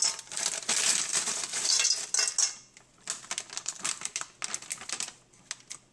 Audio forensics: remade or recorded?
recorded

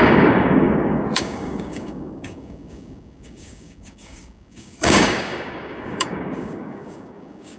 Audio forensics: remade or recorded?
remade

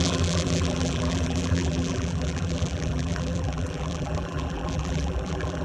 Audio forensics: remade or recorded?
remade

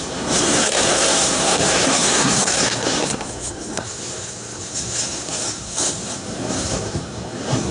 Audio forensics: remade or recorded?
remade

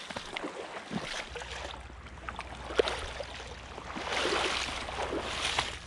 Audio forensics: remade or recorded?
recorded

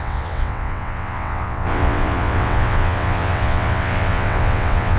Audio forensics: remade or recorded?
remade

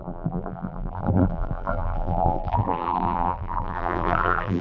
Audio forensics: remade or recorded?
remade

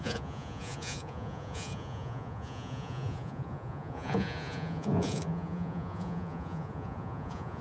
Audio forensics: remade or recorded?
remade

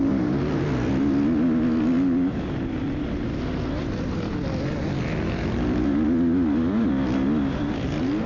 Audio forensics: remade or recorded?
recorded